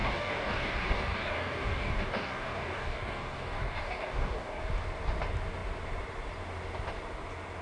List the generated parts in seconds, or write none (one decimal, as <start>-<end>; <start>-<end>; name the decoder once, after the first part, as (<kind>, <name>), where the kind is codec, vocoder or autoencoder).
0.0-4.6 (codec, DAC)